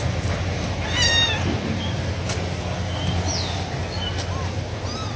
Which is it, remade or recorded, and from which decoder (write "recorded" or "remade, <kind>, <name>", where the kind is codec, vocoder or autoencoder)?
recorded